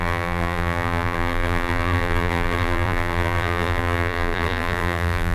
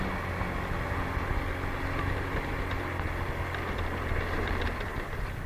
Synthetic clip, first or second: first